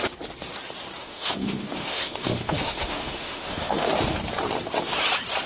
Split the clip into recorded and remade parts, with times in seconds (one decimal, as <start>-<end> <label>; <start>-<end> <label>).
0.0-1.0 recorded; 1.0-3.9 remade; 3.9-5.5 recorded